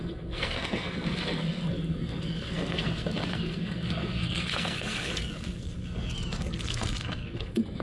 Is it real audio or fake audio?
fake